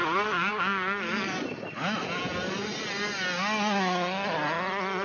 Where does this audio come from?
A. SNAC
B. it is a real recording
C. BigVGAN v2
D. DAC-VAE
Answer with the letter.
B